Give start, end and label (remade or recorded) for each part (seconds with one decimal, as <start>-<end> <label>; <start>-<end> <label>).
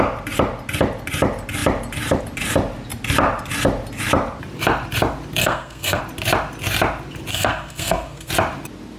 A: 0.0-5.4 recorded; 5.4-6.0 remade; 6.0-7.3 recorded; 7.3-8.3 remade; 8.3-9.0 recorded